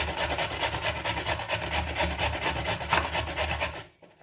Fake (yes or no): no